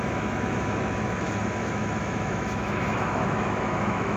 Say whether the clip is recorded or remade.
remade